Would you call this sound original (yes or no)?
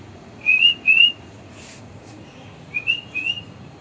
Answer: no